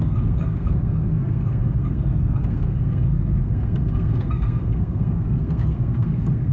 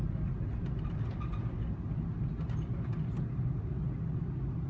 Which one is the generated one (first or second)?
first